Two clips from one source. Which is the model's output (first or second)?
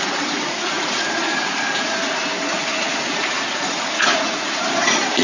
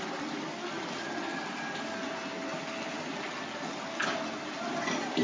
first